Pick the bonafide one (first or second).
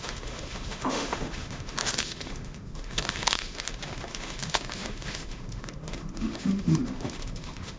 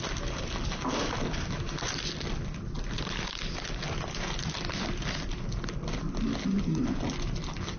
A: second